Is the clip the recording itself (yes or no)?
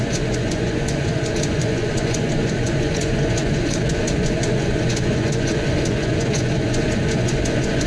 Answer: no